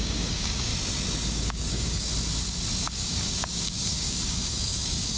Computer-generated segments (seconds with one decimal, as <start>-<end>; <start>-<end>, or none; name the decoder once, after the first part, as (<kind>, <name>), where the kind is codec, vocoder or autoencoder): 0.0-0.7 (codec, DAC); 1.3-2.1; 2.8-5.2

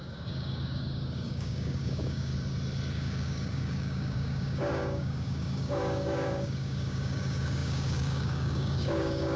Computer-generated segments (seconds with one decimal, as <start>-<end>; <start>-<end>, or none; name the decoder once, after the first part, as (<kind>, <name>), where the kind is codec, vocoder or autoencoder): 0.0-2.3 (codec, DAC); 2.9-9.4

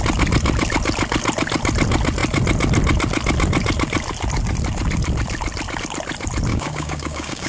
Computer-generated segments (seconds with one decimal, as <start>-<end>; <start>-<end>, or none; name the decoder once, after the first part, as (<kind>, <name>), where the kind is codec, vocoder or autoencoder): 6.5-7.5 (codec, DAC)

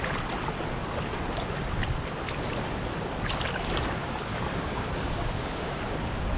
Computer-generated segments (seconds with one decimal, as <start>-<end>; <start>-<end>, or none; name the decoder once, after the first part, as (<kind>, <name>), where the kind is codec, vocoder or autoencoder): 4.0-5.8 (codec, DAC)

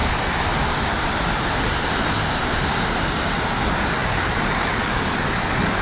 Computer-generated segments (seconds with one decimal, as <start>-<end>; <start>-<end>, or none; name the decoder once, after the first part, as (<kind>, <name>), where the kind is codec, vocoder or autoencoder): 4.0-5.8 (codec, DAC)

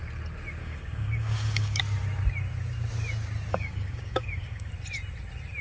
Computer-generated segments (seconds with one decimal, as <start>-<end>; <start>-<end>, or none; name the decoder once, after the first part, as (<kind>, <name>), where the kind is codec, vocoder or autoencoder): 0.6-1.8 (codec, DAC); 3.5-4.7

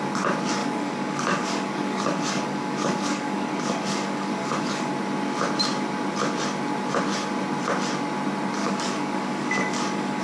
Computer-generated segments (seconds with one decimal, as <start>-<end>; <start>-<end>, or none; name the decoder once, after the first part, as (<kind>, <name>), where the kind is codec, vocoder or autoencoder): 0.6-4.9 (codec, DAC); 8.6-10.2